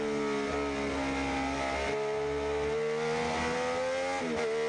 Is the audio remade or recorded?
recorded